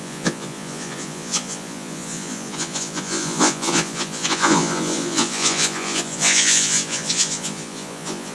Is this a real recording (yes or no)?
no